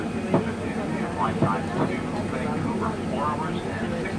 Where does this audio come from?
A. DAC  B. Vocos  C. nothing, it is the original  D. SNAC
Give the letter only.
C